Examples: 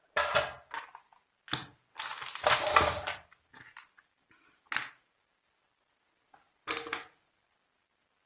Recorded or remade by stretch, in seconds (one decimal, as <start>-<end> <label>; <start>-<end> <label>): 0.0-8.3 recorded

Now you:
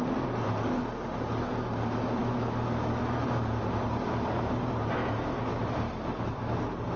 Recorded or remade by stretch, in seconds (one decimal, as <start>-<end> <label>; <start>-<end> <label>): 0.0-2.2 recorded; 2.2-3.0 remade; 3.0-7.0 recorded

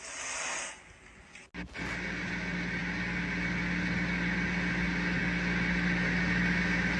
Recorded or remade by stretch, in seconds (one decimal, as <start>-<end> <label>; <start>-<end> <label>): 0.0-7.0 recorded